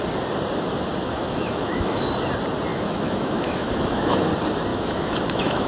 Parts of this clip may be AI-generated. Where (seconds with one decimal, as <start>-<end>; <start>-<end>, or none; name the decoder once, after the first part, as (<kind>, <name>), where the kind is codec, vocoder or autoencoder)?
1.0-2.1 (autoencoder, DAC-VAE); 2.7-4.3; 4.7-5.7